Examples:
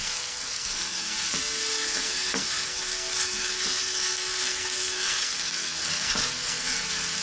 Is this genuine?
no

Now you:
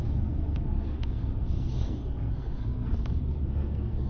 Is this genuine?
no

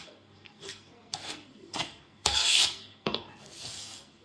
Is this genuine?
no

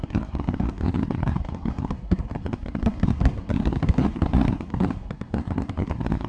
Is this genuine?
no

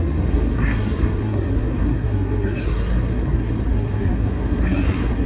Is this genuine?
no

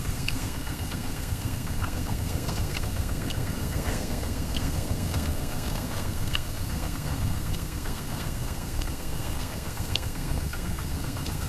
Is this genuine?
no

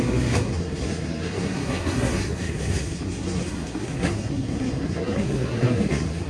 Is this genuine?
no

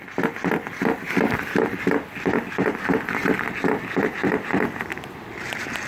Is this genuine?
yes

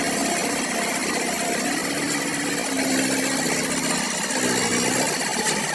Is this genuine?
yes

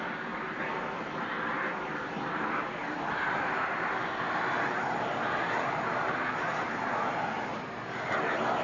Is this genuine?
yes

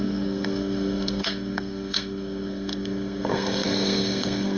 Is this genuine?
no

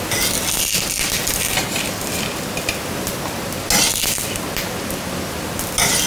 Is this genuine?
yes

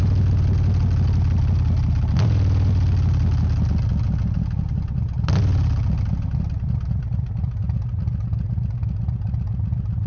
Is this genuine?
yes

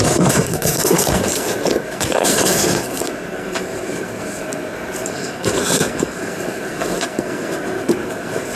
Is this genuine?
no